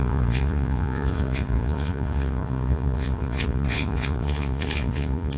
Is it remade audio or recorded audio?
remade